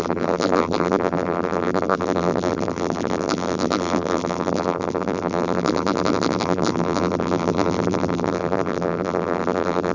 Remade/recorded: remade